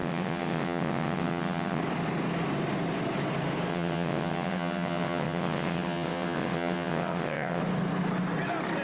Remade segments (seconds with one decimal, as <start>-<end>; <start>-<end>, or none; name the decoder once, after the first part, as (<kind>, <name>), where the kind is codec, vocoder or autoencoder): 0.0-1.8 (vocoder, WaveNeXt); 3.7-7.6